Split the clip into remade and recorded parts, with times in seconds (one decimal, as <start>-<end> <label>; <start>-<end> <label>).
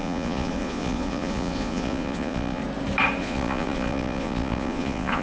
0.0-2.6 remade; 2.6-3.2 recorded; 3.2-5.2 remade